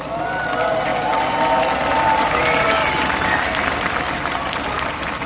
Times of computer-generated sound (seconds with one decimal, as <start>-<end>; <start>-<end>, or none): none